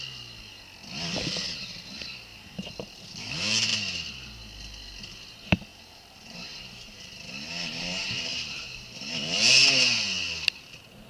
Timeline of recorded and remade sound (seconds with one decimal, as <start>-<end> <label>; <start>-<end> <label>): 0.0-2.3 recorded; 2.3-3.3 remade; 3.3-5.7 recorded; 5.7-7.3 remade; 7.3-8.3 recorded; 8.3-9.1 remade; 9.1-11.1 recorded